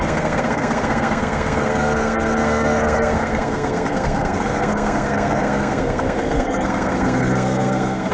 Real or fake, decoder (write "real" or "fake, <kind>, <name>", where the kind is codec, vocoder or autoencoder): fake, codec, SNAC